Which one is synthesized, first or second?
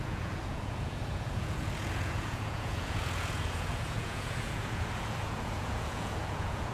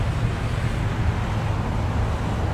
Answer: first